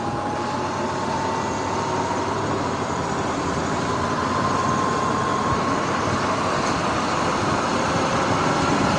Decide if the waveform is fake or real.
real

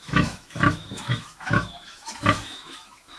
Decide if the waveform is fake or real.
fake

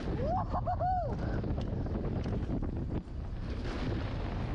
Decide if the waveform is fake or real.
real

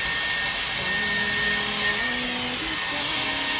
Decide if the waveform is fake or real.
real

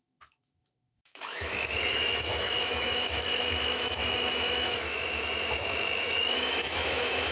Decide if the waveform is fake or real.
fake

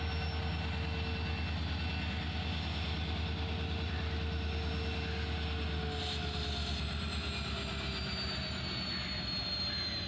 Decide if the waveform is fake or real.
real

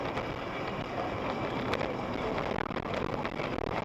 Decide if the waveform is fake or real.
real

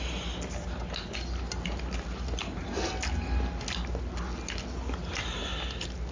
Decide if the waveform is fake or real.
real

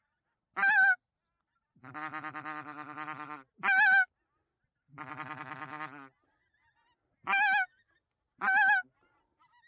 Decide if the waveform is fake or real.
real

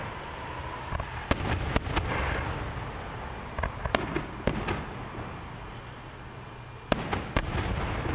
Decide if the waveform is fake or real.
real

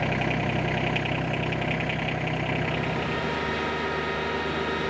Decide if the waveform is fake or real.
real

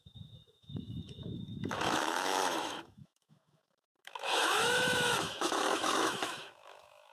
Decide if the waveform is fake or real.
fake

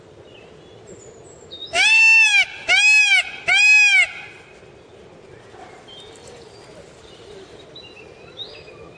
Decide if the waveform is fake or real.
real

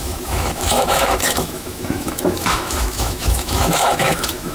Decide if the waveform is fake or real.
fake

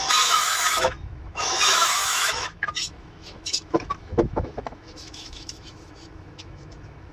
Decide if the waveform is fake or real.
fake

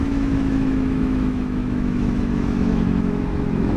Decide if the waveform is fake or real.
fake